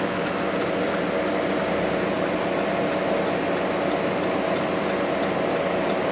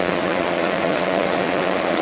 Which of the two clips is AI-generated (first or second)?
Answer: second